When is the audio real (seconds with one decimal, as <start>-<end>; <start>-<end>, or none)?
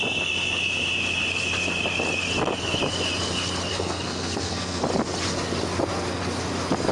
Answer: 0.0-3.7; 4.8-6.9